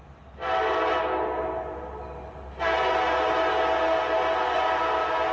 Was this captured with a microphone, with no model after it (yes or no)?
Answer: yes